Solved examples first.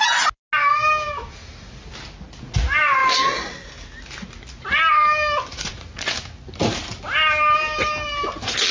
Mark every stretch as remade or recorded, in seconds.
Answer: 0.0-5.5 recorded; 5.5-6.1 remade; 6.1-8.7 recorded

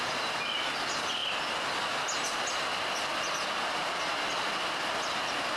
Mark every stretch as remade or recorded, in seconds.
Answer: 0.0-5.6 recorded

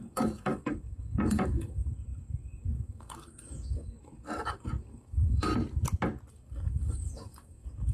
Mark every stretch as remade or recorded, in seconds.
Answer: 0.0-5.5 remade; 5.5-6.3 recorded; 6.3-7.9 remade

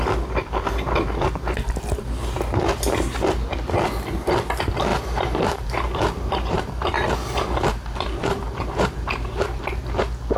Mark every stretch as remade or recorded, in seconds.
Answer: 0.0-4.9 recorded; 4.9-9.6 remade; 9.6-10.4 recorded